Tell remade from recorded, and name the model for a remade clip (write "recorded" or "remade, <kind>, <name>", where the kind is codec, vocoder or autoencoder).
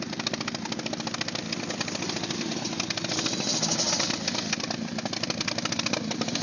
recorded